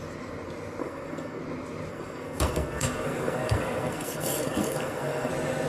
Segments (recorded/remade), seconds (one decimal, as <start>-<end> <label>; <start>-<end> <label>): 0.0-0.8 recorded; 0.8-1.4 remade; 1.4-1.9 recorded; 1.9-5.3 remade; 5.3-5.7 recorded